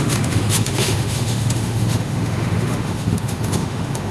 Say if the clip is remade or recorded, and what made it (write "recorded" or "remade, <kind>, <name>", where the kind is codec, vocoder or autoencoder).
remade, autoencoder, DAC-VAE